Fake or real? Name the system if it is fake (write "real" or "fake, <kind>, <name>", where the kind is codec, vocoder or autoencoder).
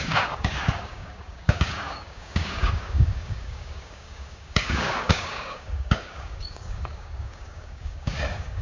fake, codec, DAC